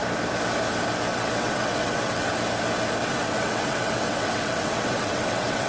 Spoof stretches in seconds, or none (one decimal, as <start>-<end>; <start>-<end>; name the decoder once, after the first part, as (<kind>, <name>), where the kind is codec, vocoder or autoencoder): 1.1-2.3 (vocoder, WaveNeXt); 3.0-5.7